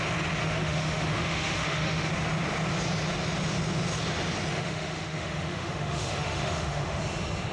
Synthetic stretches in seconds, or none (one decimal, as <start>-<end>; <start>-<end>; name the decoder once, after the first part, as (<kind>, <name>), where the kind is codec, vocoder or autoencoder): 0.4-2.1 (autoencoder, DAC-VAE); 4.5-7.0